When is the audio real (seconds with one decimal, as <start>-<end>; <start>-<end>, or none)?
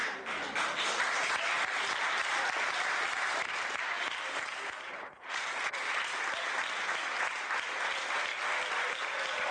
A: 0.0-9.5